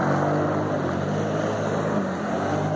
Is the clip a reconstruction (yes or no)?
no